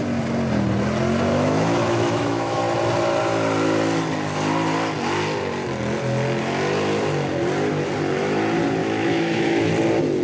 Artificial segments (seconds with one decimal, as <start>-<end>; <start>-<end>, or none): 1.3-2.6; 8.8-9.7